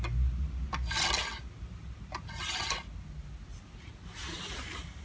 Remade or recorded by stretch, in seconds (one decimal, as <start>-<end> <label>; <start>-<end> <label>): 0.0-5.0 recorded